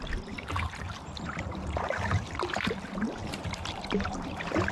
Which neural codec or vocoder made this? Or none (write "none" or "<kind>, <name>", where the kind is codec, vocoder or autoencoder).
vocoder, BigVGAN v2